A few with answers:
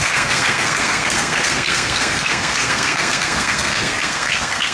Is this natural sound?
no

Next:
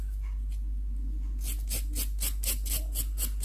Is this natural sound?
yes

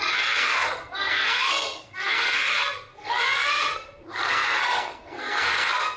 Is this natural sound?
no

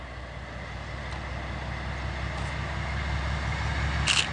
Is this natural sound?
yes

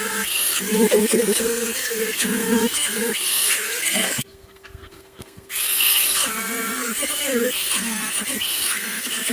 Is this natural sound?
no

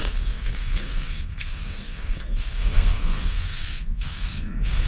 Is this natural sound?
no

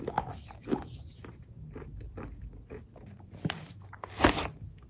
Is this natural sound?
yes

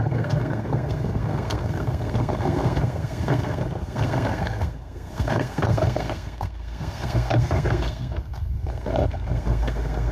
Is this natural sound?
no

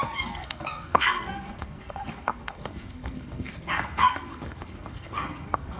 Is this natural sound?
no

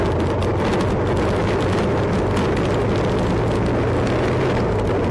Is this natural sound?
yes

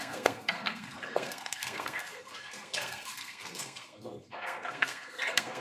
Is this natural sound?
no